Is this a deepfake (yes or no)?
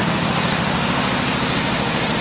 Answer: no